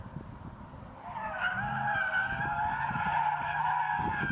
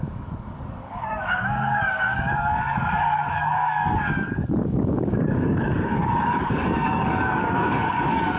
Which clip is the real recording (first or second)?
first